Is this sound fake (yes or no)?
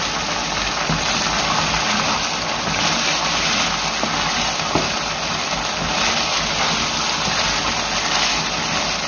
no